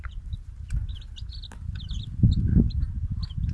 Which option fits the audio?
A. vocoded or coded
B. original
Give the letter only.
B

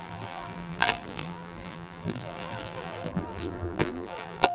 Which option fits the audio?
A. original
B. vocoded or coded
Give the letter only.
B